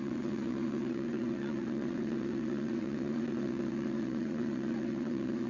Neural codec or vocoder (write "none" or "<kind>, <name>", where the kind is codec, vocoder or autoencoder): vocoder, WaveNeXt